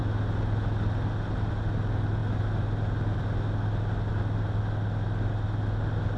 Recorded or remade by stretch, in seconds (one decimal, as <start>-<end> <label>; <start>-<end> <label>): 0.0-6.2 recorded